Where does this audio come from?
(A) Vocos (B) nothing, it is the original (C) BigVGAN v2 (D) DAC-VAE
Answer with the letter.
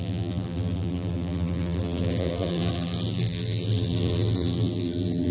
C